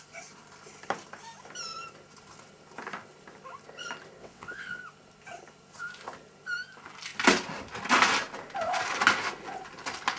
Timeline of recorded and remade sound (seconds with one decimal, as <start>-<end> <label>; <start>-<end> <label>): 0.0-4.2 recorded; 4.2-4.8 remade; 4.8-10.2 recorded